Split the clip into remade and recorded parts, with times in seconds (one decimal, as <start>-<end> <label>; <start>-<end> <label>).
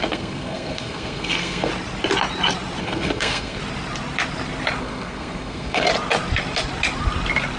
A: 0.0-1.7 remade; 1.7-2.8 recorded; 2.8-3.6 remade; 3.6-4.8 recorded; 4.8-5.9 remade; 5.9-7.6 recorded